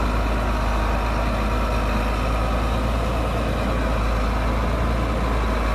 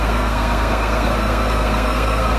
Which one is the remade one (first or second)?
second